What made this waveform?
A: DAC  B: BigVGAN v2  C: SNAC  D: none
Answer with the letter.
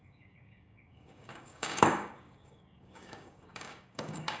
A